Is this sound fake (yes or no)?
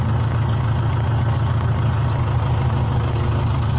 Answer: no